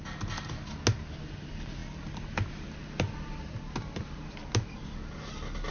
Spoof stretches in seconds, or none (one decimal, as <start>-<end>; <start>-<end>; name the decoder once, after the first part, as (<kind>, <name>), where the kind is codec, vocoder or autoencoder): none